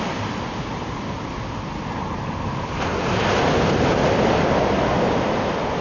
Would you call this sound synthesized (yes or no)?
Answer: no